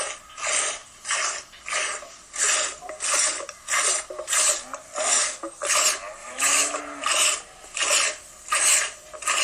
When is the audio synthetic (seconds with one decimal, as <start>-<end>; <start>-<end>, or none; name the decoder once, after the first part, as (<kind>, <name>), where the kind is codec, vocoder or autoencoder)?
6.2-6.8 (autoencoder, DAC-VAE)